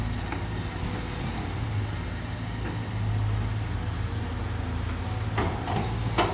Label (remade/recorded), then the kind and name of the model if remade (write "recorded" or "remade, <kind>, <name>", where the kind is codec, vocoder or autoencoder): recorded